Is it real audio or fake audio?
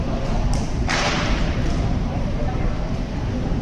fake